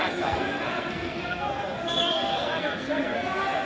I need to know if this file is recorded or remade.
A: remade